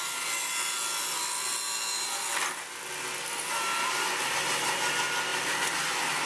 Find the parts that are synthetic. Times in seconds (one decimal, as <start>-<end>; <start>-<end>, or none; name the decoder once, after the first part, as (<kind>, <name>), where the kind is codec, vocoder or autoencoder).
none